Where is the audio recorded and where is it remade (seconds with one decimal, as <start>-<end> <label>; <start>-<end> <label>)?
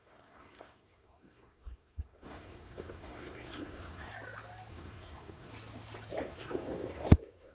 0.0-4.1 remade; 4.1-4.7 recorded; 4.7-5.5 remade; 5.5-6.2 recorded; 6.2-7.5 remade